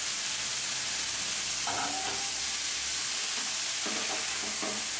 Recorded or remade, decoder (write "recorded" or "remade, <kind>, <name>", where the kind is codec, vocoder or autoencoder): recorded